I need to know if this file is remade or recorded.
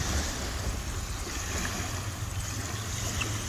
recorded